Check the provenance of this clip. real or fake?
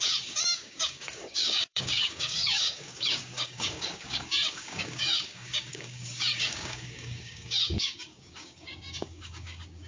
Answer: fake